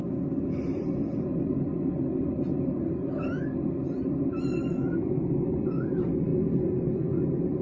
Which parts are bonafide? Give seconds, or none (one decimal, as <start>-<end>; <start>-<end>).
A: 0.0-0.8; 4.7-7.6